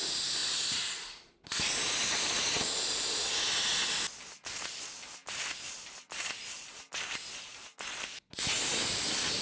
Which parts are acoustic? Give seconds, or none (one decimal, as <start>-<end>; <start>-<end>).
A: 0.0-9.4